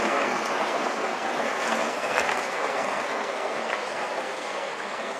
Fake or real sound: fake